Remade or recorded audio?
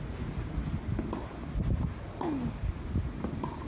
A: recorded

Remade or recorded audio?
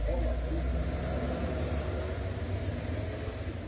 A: recorded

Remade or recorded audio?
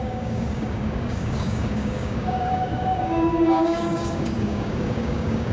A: remade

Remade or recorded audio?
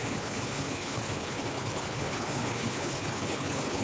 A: remade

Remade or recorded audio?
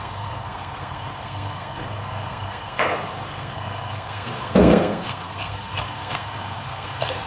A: remade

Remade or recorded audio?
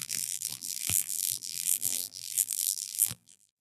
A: remade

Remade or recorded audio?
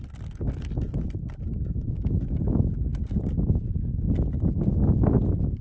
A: recorded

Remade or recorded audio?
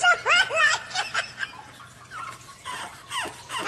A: recorded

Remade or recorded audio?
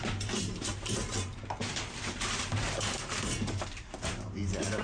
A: remade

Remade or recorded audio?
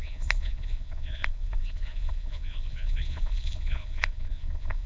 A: remade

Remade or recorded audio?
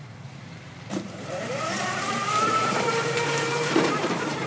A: remade